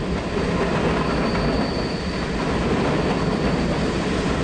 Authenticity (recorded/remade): recorded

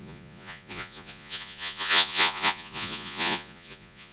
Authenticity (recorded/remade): remade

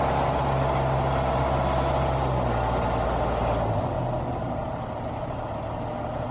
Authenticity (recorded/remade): recorded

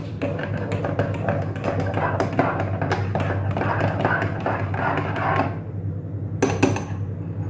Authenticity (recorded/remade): recorded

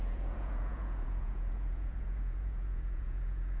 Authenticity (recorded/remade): remade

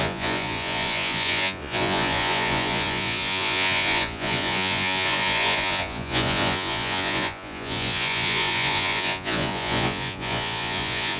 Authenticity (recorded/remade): remade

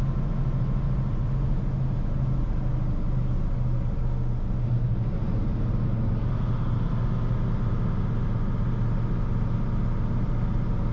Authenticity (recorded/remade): recorded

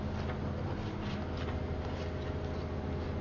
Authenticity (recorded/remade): recorded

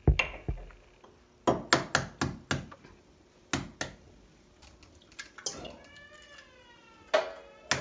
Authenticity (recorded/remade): recorded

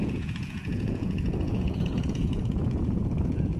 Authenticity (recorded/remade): remade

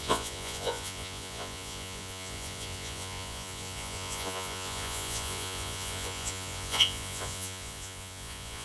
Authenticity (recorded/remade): remade